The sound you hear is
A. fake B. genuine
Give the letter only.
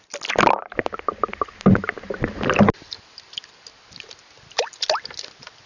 B